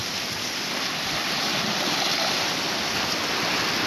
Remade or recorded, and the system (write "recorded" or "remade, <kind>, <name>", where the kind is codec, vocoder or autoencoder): recorded